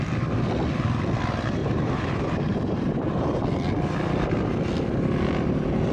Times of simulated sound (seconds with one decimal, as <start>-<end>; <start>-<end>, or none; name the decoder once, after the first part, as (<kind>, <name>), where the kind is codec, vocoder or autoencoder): 1.6-3.4 (vocoder, BigVGAN v2)